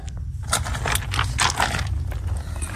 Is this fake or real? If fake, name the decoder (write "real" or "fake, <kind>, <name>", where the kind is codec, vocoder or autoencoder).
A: real